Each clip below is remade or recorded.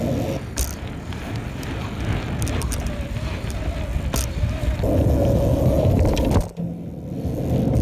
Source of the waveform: recorded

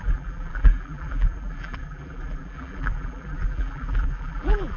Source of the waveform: remade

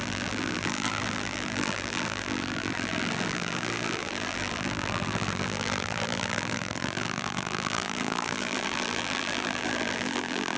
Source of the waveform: remade